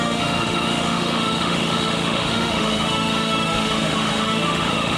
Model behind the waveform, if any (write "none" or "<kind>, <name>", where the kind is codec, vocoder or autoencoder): autoencoder, DAC-VAE